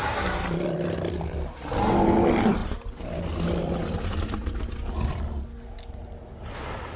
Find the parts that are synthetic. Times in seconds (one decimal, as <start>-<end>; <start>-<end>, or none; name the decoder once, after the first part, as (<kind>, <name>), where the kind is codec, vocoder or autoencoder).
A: none